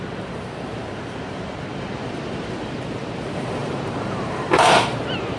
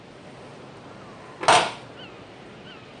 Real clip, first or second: second